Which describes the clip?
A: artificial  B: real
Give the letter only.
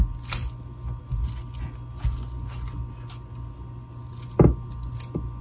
B